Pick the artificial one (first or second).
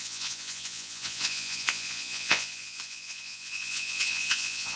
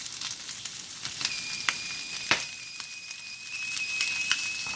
first